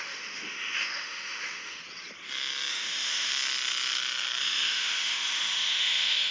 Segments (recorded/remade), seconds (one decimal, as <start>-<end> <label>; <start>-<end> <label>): 0.0-1.8 remade; 1.8-2.7 recorded; 2.7-3.3 remade; 3.3-4.4 recorded; 4.4-6.3 remade